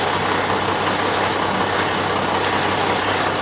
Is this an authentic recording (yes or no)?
yes